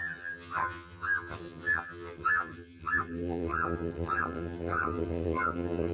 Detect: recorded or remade remade